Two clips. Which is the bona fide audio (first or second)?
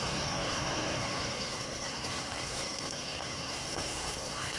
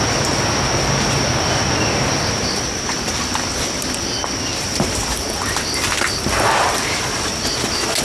second